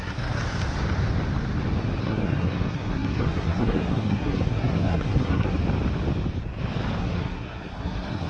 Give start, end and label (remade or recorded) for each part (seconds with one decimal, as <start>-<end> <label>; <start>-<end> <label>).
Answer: 0.0-0.4 remade; 0.4-2.0 recorded; 2.0-5.6 remade; 5.6-7.0 recorded; 7.0-8.3 remade